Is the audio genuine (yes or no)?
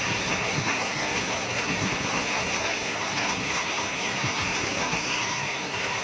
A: no